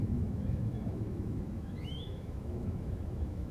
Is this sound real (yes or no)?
no